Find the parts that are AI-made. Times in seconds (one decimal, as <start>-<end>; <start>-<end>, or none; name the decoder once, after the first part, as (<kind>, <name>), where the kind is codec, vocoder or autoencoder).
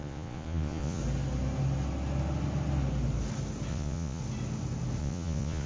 0.0-1.0 (vocoder, Vocos); 3.7-4.2; 5.0-5.7